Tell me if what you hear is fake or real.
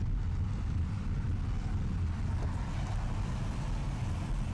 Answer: real